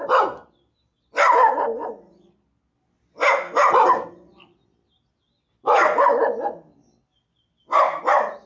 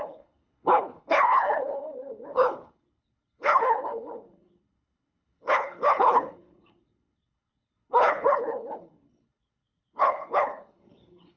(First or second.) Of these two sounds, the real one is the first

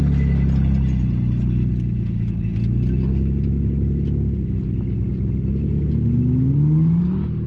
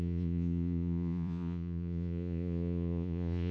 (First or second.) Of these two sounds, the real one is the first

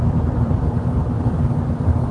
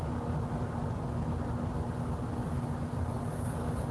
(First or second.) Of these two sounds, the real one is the second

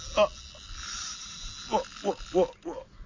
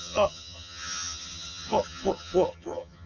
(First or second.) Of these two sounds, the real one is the first